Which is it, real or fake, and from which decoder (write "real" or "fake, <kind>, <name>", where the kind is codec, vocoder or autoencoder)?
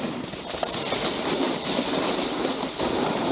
real